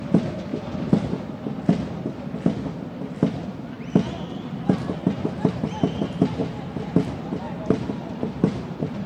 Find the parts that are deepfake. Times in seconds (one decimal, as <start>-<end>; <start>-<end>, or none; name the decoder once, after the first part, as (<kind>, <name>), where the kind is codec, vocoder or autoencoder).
0.0-0.5 (vocoder, BigVGAN v2); 5.0-6.4; 7.2-9.1